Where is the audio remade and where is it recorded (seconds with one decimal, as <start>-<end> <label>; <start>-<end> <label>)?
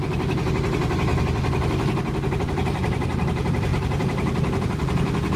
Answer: 0.0-1.1 remade; 1.1-2.4 recorded; 2.4-5.4 remade